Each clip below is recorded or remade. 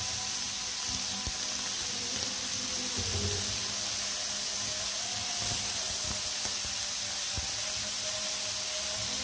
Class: recorded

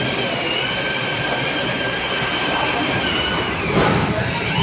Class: remade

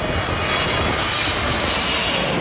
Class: recorded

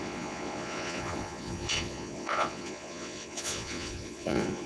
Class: remade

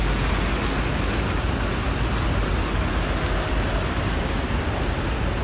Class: recorded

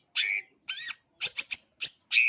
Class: recorded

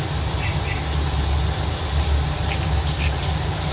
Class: recorded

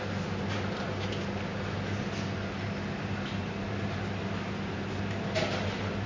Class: recorded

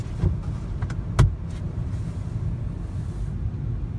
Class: recorded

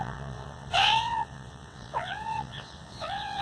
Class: remade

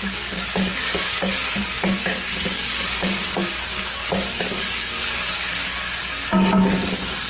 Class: remade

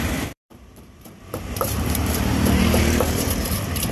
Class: remade